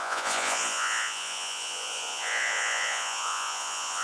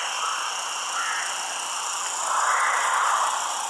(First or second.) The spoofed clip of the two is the first